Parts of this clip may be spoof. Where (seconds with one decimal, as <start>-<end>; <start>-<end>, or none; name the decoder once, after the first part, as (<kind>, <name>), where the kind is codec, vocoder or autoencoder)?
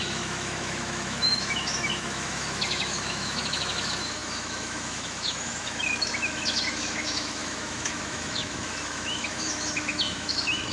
0.0-10.7 (autoencoder, DAC-VAE)